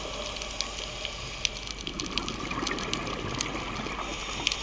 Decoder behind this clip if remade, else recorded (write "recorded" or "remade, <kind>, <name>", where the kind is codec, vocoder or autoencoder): recorded